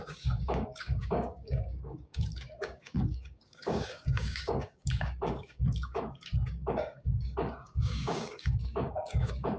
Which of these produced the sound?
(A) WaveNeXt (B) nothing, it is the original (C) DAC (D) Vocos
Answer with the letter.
C